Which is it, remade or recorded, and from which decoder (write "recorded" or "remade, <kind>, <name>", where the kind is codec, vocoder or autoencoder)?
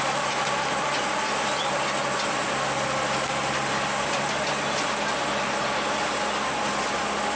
recorded